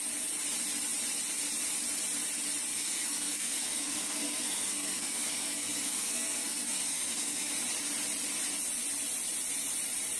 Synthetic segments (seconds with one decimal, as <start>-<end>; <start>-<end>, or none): 2.7-7.5